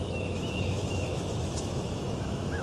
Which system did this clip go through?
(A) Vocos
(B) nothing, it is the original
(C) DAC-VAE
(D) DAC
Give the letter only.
C